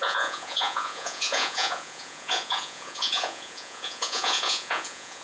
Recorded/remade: remade